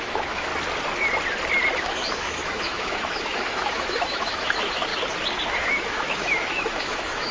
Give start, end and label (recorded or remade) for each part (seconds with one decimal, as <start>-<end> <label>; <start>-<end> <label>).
0.0-0.5 remade; 0.5-1.8 recorded; 1.8-4.9 remade; 4.9-5.5 recorded; 5.5-7.3 remade